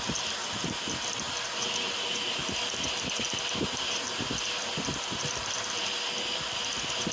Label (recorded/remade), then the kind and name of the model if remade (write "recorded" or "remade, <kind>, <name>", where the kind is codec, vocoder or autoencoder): remade, vocoder, BigVGAN v2